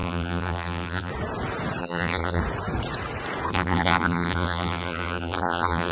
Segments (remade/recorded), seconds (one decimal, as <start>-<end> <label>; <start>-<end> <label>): 0.0-1.1 remade; 1.1-1.8 recorded; 1.8-2.4 remade; 2.4-3.5 recorded; 3.5-5.9 remade